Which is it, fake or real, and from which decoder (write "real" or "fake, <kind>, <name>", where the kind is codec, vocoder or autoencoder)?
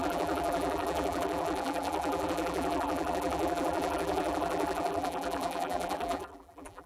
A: fake, vocoder, BigVGAN v2